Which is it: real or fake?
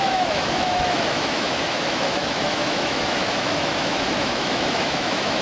fake